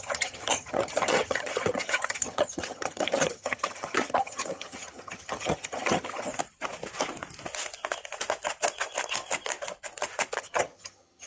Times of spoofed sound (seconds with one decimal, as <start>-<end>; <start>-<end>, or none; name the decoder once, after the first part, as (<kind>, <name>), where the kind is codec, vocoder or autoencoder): 0.0-6.3 (vocoder, HiFi-GAN); 10.4-11.3